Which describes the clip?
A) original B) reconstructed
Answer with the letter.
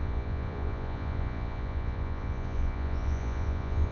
B